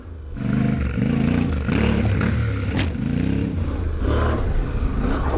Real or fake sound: real